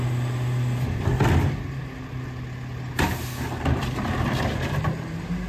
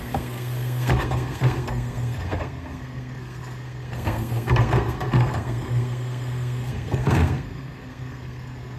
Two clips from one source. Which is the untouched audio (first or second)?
first